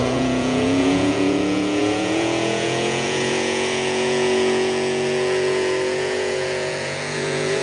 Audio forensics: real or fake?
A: fake